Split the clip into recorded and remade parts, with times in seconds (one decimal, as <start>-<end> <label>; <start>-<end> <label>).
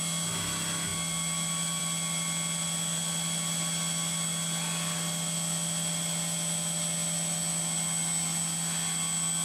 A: 0.0-9.4 recorded